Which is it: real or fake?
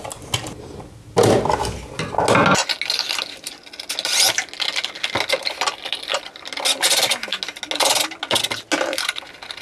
real